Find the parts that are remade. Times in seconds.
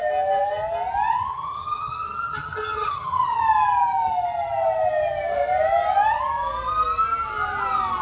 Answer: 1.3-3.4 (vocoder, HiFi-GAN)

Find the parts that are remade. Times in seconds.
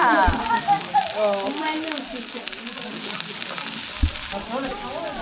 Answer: none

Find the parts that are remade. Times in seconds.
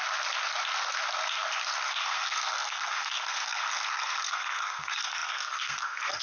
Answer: 1.9-6.2 (codec, SNAC)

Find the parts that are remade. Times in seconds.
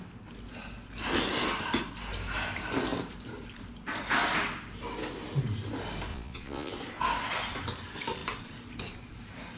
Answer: 6.1-6.7 (vocoder, Vocos)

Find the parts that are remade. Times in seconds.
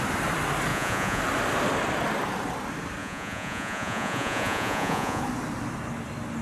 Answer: 0.7-1.2 (vocoder, Vocos); 3.0-5.2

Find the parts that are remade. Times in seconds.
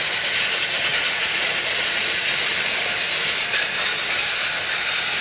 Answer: 0.9-2.5 (vocoder, Vocos)